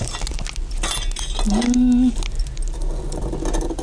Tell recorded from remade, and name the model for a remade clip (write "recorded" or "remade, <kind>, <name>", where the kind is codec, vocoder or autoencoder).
recorded